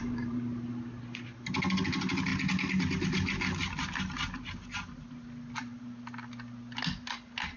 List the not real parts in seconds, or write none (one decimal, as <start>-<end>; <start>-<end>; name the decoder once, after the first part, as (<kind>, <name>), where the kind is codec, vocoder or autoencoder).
none